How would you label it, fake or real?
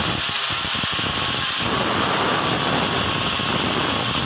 real